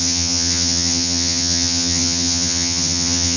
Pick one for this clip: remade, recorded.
remade